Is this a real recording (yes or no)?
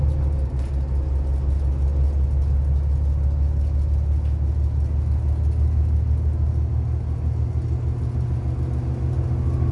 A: yes